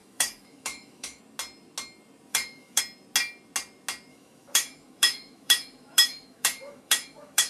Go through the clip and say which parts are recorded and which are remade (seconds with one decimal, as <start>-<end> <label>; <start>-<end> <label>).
0.0-1.2 remade; 1.2-2.3 recorded; 2.3-2.8 remade; 2.8-4.1 recorded; 4.1-7.5 remade